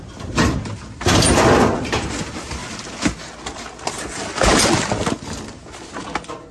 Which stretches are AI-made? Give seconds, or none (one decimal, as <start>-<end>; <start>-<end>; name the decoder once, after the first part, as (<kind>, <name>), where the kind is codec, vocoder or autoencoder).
none

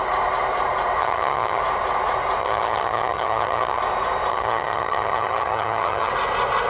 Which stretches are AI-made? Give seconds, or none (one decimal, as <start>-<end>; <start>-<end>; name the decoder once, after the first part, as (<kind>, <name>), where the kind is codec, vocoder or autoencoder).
1.0-1.6 (vocoder, HiFi-GAN); 2.4-3.8; 4.3-6.1

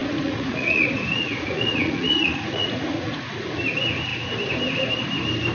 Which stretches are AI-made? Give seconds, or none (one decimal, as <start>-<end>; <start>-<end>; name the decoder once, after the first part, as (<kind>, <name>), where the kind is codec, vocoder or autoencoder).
0.0-3.3 (vocoder, Vocos)

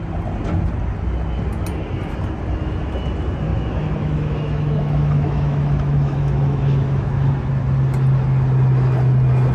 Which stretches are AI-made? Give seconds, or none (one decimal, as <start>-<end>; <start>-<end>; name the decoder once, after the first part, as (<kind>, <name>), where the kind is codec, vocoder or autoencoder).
3.5-7.3 (autoencoder, DAC-VAE)

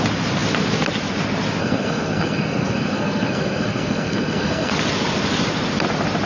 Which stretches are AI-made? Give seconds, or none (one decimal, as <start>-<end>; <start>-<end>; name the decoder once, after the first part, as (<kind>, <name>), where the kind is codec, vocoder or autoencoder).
1.6-4.7 (codec, SNAC)

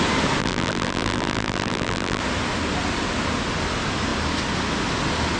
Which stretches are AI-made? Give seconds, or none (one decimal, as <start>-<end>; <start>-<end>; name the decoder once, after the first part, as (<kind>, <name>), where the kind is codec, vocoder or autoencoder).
0.4-2.2 (vocoder, BigVGAN v2)

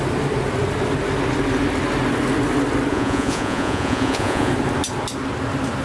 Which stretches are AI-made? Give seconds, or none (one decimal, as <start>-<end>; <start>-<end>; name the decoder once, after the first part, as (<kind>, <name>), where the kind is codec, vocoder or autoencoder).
2.9-4.5 (vocoder, Vocos)